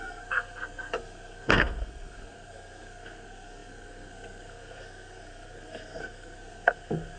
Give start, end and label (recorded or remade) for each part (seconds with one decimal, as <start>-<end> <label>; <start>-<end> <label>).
0.0-7.2 remade